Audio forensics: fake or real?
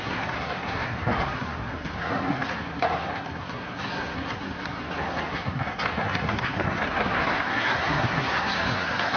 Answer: fake